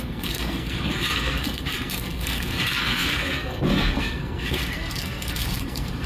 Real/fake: fake